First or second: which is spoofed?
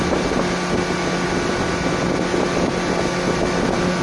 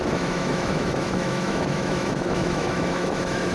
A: second